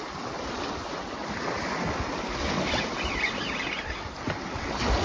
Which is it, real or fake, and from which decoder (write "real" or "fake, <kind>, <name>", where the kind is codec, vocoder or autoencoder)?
real